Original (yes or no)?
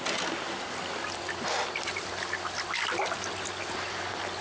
yes